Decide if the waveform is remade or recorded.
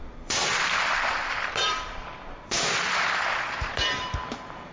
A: remade